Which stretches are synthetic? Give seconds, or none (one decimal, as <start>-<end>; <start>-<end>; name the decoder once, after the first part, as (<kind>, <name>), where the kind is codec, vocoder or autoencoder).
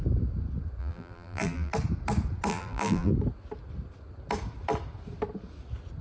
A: 0.8-1.7 (vocoder, BigVGAN v2); 2.5-3.1